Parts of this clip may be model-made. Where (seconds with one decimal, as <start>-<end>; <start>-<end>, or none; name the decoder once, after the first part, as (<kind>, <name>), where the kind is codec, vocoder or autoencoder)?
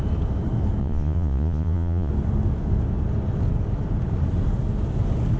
0.8-2.1 (vocoder, Vocos)